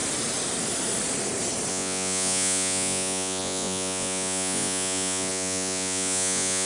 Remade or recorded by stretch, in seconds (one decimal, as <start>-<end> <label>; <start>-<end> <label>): 0.0-1.7 recorded; 1.7-6.7 remade